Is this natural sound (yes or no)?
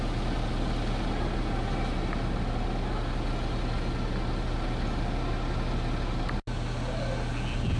yes